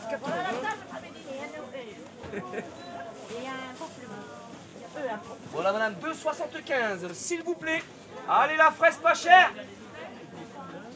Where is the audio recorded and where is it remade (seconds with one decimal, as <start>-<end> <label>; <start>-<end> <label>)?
0.0-7.1 recorded; 7.1-7.8 remade; 7.8-11.0 recorded